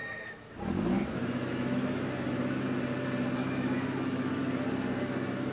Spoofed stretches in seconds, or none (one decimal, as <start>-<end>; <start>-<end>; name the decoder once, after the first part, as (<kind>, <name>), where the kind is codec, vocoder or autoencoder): 0.0-2.6 (autoencoder, DAC-VAE); 3.4-4.4